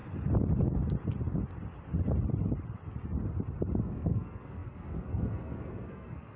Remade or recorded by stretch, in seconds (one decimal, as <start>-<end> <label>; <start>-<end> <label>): 0.0-3.8 recorded; 3.8-6.4 remade